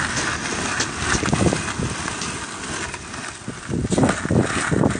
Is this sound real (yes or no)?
yes